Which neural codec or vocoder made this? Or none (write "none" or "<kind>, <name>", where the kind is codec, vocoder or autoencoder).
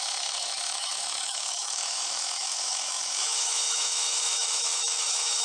autoencoder, DAC-VAE